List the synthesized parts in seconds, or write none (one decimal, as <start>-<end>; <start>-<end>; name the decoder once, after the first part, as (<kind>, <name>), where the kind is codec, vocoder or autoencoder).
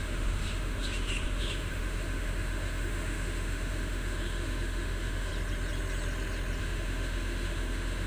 0.0-5.3 (autoencoder, DAC-VAE); 6.6-8.1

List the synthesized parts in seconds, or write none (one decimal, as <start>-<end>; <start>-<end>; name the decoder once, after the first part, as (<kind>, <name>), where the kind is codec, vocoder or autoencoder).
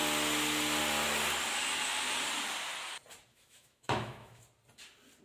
3.3-4.4 (autoencoder, DAC-VAE)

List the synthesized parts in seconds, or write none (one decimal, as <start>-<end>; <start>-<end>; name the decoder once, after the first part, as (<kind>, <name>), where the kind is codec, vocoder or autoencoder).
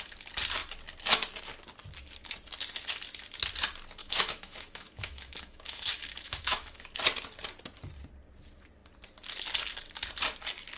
4.0-6.8 (autoencoder, DAC-VAE)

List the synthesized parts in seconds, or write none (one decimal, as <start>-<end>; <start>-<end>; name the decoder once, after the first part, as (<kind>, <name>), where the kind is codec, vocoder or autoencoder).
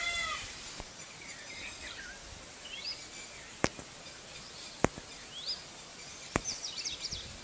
5.9-6.7 (vocoder, Vocos)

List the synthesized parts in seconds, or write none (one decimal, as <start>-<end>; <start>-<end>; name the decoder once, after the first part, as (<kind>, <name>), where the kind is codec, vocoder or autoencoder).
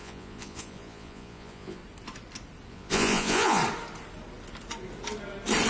0.0-1.8 (vocoder, Vocos); 2.7-3.6